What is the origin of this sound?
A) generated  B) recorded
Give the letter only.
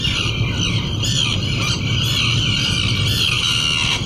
B